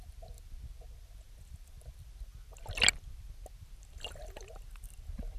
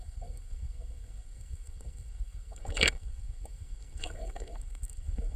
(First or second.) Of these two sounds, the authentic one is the first